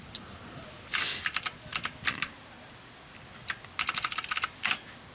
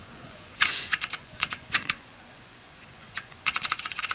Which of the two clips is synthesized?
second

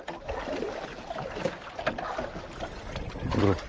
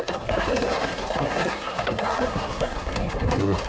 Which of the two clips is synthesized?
second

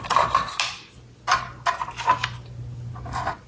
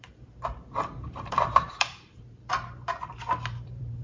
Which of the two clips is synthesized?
second